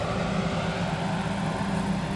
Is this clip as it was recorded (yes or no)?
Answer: yes